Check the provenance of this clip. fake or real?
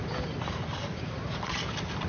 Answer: real